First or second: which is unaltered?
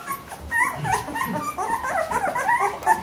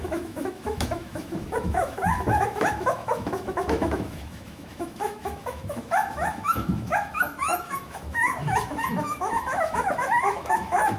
first